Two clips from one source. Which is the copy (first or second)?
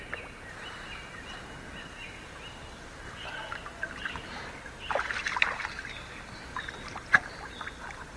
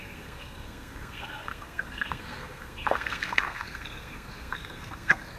second